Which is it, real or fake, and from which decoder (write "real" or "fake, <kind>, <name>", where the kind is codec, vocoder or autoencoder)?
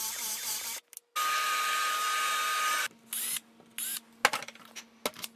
real